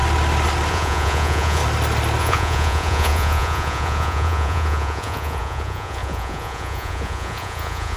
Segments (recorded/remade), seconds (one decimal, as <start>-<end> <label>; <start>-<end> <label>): 0.0-0.7 recorded; 0.7-1.6 remade; 1.6-2.2 recorded; 2.2-8.0 remade